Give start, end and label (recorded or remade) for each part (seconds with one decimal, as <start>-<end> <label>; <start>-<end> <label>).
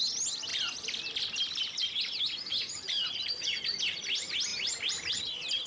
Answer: 0.0-0.5 recorded; 0.5-1.0 remade; 1.0-2.5 recorded; 2.5-3.6 remade; 3.6-4.5 recorded; 4.5-5.2 remade; 5.2-5.7 recorded